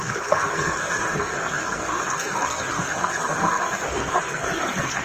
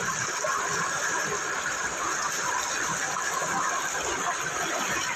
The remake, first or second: first